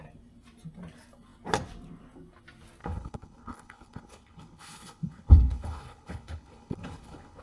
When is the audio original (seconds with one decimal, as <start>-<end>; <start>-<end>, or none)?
0.0-2.8